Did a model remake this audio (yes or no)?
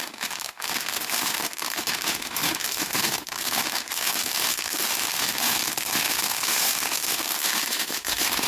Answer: yes